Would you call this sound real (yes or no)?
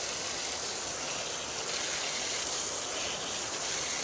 yes